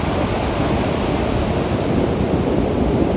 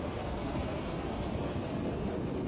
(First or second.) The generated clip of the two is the second